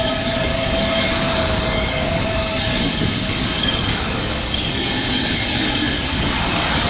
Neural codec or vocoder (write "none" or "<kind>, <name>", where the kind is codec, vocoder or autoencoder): codec, DAC